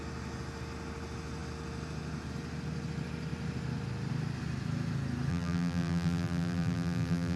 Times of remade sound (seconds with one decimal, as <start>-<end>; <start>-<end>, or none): 5.3-7.4